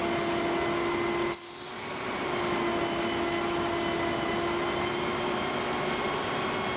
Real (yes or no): yes